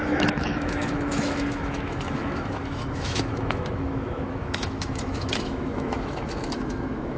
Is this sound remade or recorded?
remade